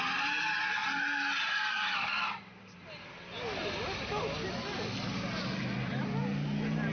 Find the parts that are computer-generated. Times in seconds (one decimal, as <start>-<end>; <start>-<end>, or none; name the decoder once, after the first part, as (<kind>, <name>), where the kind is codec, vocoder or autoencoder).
none